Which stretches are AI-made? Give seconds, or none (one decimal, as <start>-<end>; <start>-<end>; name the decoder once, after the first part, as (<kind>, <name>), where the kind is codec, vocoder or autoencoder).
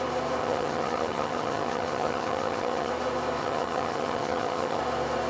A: 0.4-2.9 (vocoder, HiFi-GAN); 3.4-4.8